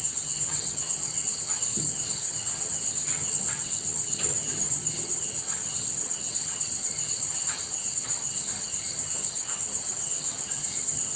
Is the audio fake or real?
fake